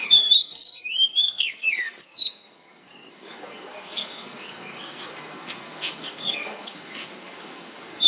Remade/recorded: remade